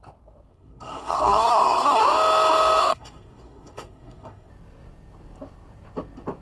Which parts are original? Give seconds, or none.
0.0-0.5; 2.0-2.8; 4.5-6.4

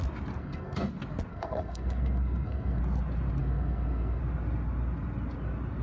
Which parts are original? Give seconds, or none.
0.0-0.4; 0.9-1.3; 2.8-3.4; 4.2-5.8

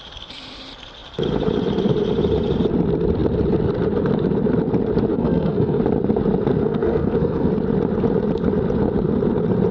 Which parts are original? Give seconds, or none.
0.0-5.1; 5.8-6.6; 7.5-9.7

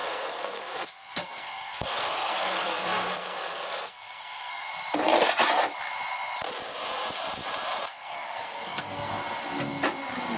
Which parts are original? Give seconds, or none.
4.7-7.9; 9.1-10.4